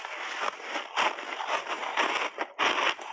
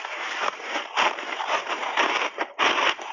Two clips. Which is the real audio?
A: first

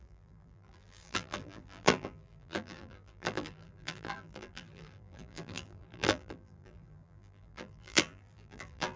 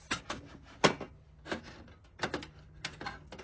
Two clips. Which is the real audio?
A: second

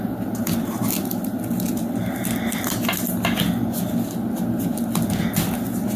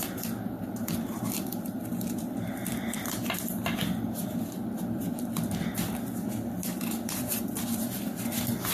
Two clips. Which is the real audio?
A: first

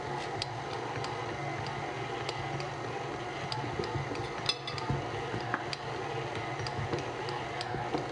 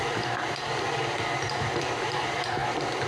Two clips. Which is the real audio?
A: first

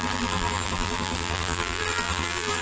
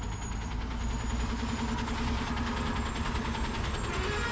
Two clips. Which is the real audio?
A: second